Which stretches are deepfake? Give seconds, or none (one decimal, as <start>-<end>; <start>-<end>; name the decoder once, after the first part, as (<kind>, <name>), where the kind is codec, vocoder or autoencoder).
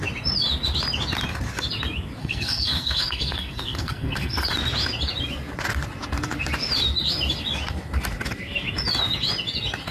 2.2-4.5 (codec, SNAC)